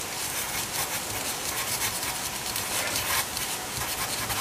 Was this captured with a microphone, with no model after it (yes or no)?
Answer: yes